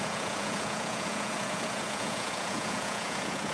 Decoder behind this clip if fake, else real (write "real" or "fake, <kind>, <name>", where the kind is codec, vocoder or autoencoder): fake, vocoder, Vocos